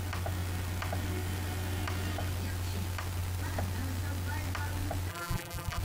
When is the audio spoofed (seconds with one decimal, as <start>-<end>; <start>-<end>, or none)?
5.1-5.8